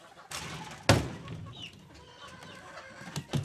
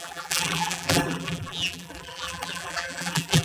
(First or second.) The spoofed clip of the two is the second